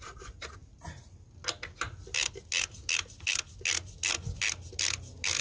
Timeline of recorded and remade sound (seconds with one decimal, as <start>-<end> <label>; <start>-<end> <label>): 0.0-5.4 recorded